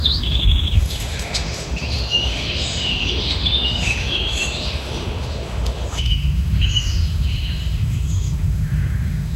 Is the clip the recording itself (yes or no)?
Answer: no